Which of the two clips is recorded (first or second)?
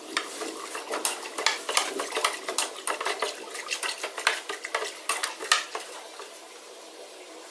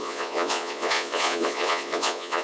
first